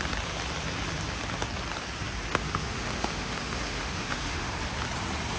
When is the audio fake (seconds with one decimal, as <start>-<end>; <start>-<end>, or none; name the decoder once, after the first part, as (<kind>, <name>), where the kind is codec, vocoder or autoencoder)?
2.4-4.5 (autoencoder, DAC-VAE)